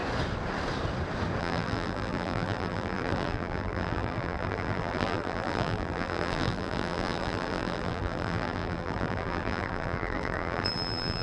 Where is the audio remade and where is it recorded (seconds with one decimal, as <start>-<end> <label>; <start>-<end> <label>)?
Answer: 0.0-1.4 recorded; 1.4-11.2 remade